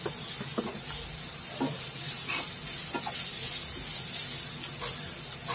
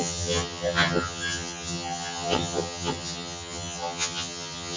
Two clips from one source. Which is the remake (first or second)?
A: second